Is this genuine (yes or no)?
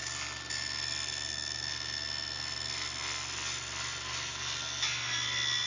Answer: yes